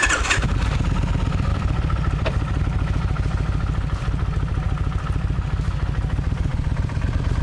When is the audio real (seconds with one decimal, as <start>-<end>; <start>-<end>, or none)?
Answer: 0.0-1.5; 2.6-6.5